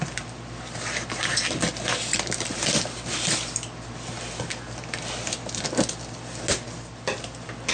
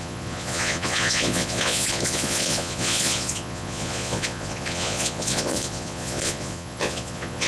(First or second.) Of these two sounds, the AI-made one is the second